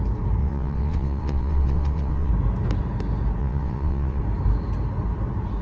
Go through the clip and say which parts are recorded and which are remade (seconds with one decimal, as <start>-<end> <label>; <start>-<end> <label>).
0.0-0.4 recorded; 0.4-2.3 remade; 2.3-3.4 recorded; 3.4-4.2 remade; 4.2-5.6 recorded